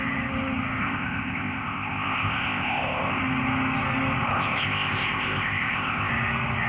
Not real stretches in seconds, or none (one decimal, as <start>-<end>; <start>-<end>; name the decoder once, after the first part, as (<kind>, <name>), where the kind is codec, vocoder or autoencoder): 0.8-3.2 (codec, ZipCodec); 4.3-6.1